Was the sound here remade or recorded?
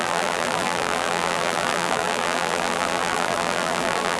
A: remade